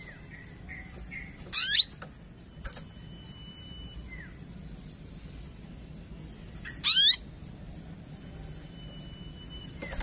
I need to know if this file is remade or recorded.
recorded